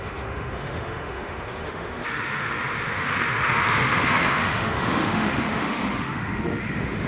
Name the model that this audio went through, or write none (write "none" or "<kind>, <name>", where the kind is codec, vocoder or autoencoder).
autoencoder, DAC-VAE